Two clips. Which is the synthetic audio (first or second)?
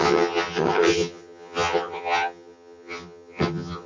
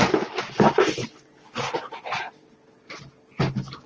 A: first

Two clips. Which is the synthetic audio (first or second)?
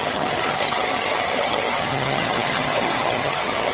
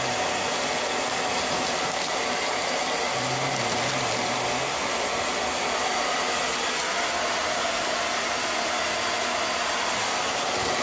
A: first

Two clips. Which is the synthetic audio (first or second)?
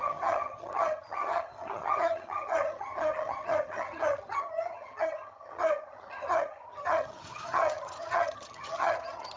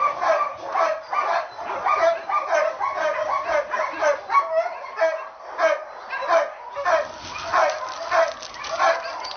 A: first